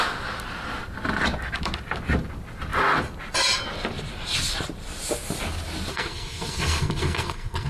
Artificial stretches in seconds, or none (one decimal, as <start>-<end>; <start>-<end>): 5.9-7.7